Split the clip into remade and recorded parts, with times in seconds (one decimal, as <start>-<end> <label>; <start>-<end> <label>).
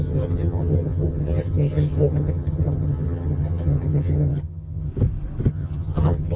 0.0-4.9 remade; 4.9-5.5 recorded; 5.5-6.4 remade